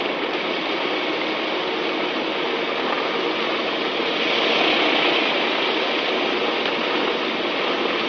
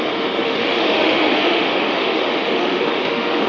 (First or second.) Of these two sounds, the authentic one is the first